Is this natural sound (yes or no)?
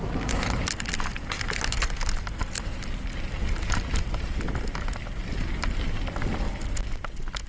yes